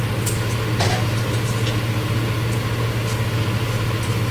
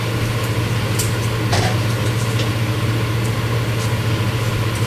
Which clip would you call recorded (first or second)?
first